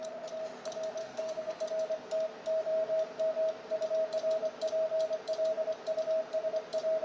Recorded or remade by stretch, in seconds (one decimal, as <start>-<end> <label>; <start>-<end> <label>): 0.0-1.0 recorded; 1.0-1.6 remade; 1.6-7.0 recorded